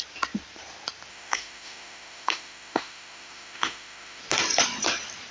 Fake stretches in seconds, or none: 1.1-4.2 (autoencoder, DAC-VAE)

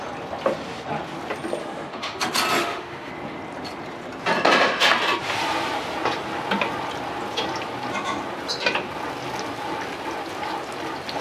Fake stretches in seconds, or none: 1.6-2.2 (autoencoder, DAC-VAE); 2.6-3.1

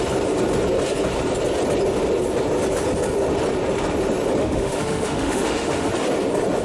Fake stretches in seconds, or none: 4.4-5.9 (autoencoder, DAC-VAE)